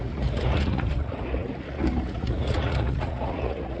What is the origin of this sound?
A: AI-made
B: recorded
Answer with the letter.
A